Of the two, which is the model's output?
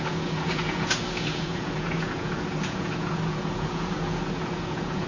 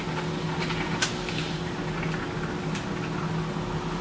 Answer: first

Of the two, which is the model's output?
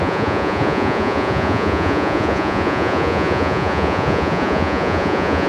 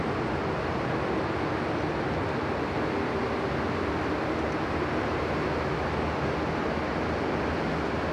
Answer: first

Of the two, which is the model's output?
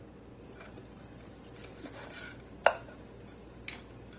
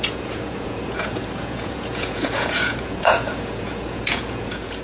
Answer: second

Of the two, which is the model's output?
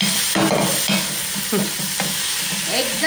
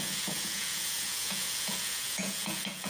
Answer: second